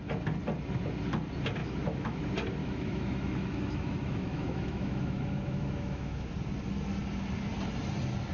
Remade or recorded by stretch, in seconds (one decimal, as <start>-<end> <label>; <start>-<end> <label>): 0.0-1.6 recorded; 1.6-2.2 remade; 2.2-2.6 recorded; 2.6-6.3 remade; 6.3-8.3 recorded